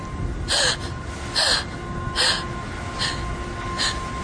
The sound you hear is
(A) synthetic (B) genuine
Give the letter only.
B